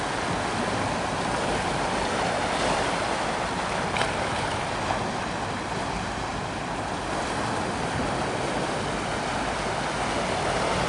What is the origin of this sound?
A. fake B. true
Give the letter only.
B